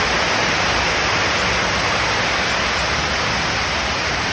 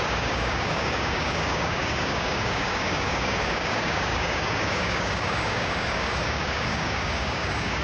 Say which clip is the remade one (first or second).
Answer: second